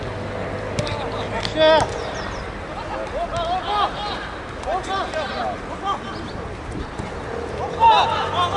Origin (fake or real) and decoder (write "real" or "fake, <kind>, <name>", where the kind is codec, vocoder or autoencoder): real